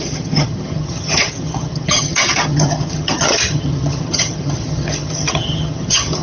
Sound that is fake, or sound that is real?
fake